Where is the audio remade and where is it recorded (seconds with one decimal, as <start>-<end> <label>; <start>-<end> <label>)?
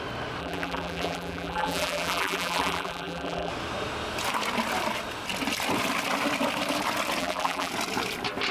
0.0-0.4 recorded; 0.4-3.5 remade; 3.5-7.2 recorded; 7.2-7.7 remade; 7.7-8.5 recorded